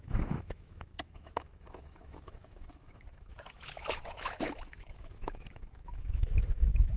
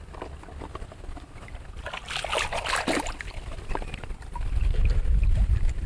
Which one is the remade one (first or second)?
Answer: first